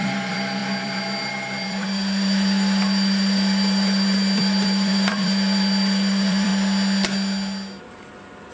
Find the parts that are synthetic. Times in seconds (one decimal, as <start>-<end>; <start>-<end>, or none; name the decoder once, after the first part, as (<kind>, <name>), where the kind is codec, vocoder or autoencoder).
0.0-6.5 (vocoder, BigVGAN v2)